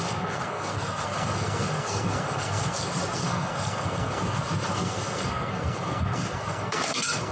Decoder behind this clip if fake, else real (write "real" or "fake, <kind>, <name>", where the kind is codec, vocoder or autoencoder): fake, codec, SNAC